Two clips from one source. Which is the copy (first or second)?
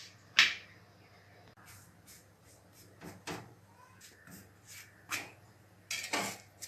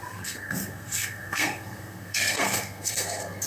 second